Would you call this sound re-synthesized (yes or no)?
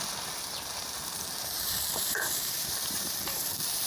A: yes